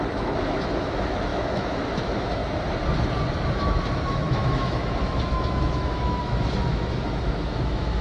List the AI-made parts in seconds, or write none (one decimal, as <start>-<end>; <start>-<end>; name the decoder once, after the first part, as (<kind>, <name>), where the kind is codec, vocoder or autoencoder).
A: 0.0-2.4 (autoencoder, DAC-VAE); 3.5-8.0